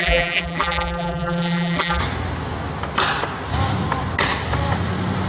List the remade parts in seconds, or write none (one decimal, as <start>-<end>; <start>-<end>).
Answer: 0.0-2.0